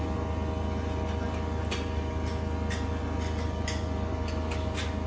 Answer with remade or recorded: recorded